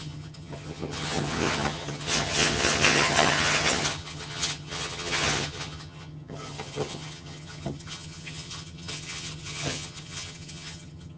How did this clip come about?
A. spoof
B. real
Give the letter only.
A